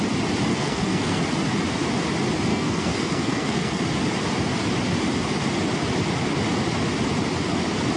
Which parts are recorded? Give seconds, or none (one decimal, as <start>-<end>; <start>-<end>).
0.0-0.5; 1.2-2.5; 3.8-8.0